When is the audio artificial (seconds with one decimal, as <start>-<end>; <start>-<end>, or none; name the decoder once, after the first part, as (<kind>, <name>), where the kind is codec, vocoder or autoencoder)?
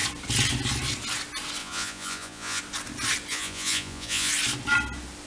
1.6-2.6 (vocoder, Vocos); 3.3-4.3